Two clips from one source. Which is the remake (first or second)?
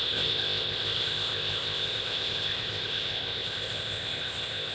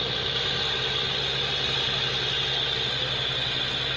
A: first